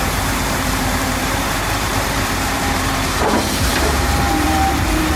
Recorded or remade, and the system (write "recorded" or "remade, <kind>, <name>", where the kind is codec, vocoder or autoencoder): remade, vocoder, BigVGAN v2